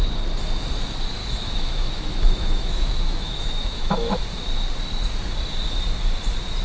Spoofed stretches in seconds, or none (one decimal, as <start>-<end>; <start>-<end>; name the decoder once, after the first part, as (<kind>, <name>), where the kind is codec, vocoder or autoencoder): 1.2-4.4 (autoencoder, DAC-VAE)